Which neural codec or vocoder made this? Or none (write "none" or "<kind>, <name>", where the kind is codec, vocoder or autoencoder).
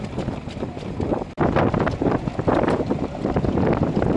none